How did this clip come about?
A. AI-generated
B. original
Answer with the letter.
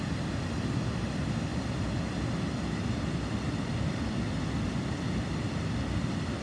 B